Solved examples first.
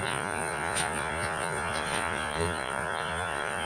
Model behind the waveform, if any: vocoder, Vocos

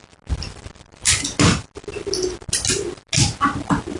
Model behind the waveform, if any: none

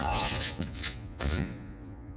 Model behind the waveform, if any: vocoder, Vocos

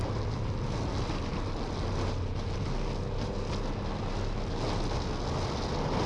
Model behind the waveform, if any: none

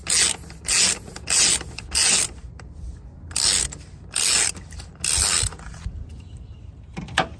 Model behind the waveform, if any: none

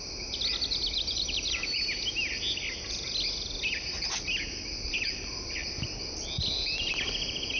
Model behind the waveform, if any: none